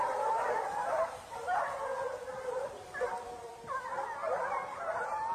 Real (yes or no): no